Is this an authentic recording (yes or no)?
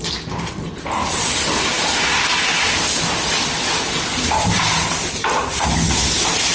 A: yes